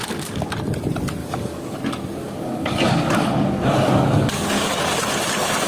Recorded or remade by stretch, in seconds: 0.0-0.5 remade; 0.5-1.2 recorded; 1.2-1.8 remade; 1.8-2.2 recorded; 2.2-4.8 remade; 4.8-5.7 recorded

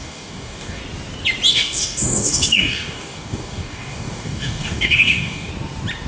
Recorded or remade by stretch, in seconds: 0.0-0.8 remade; 0.8-1.5 recorded; 1.5-5.5 remade; 5.5-6.1 recorded

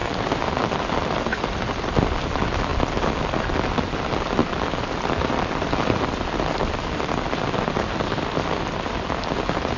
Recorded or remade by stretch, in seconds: 0.0-9.8 recorded

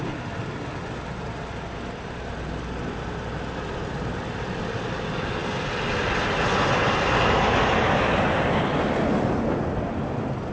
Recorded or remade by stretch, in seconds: 0.0-10.5 recorded

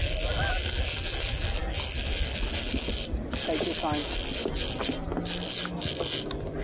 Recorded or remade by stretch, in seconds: 0.0-6.6 recorded

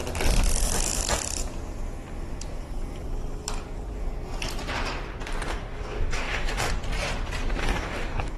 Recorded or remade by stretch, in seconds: 0.0-5.5 recorded; 5.5-6.7 remade; 6.7-7.6 recorded; 7.6-8.4 remade

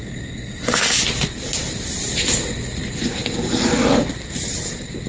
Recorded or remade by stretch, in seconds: 0.0-1.0 remade; 1.0-5.1 recorded